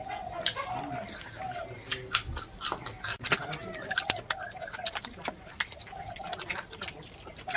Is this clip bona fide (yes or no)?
yes